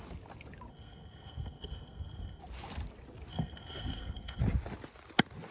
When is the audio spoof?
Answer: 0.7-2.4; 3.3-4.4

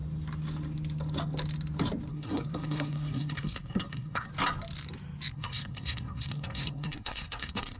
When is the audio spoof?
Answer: 2.1-4.3; 5.3-7.8